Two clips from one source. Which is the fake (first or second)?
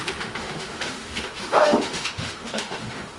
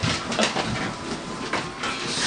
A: first